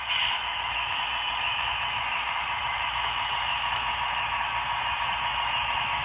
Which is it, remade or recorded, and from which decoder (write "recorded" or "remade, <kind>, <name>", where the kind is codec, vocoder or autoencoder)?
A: remade, autoencoder, DAC-VAE